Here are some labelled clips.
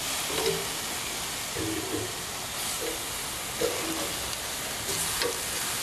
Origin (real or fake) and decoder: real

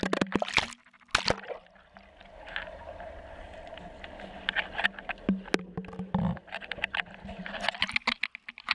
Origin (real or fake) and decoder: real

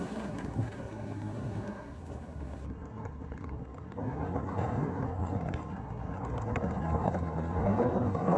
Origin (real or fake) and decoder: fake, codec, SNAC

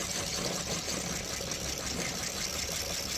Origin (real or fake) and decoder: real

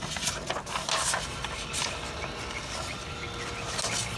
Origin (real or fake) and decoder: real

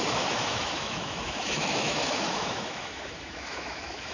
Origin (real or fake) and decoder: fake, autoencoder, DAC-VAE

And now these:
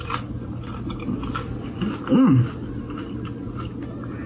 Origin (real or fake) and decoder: real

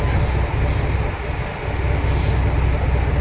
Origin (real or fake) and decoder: real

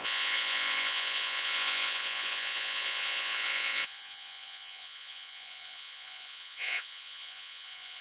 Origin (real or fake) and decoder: fake, vocoder, Vocos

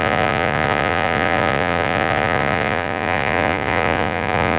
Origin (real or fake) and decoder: fake, vocoder, Vocos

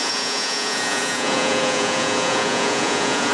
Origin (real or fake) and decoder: fake, vocoder, Vocos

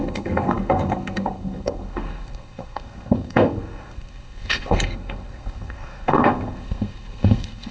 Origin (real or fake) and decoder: fake, codec, SNAC